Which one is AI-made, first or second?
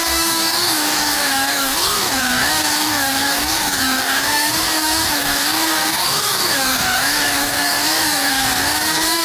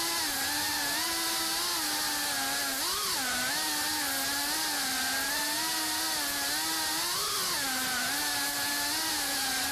first